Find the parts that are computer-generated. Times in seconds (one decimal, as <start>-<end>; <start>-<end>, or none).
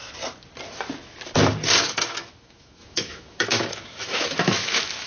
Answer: 1.8-5.1